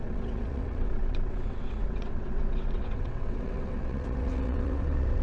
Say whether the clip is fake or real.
fake